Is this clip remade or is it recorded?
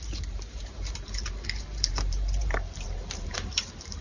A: remade